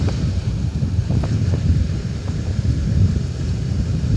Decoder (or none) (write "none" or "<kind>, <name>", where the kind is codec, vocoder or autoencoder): vocoder, BigVGAN v2